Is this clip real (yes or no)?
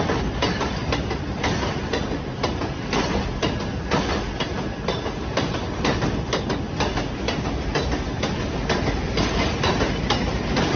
yes